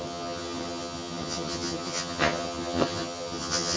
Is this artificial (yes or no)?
yes